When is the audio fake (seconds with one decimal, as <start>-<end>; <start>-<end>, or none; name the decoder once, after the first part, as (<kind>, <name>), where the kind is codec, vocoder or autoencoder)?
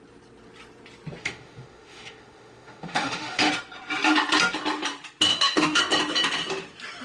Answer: 1.2-3.5 (autoencoder, DAC-VAE); 5.3-5.8